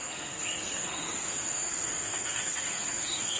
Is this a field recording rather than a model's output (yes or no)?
no